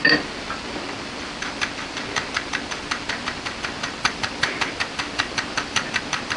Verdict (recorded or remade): remade